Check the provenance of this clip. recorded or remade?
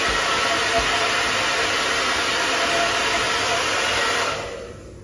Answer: recorded